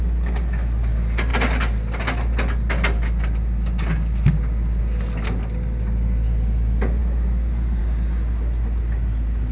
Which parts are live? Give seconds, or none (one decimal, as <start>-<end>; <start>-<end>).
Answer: 0.0-9.5